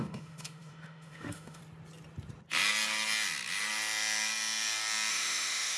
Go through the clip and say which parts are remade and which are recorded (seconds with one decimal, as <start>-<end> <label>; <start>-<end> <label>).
0.0-1.6 remade; 1.6-5.1 recorded; 5.1-5.8 remade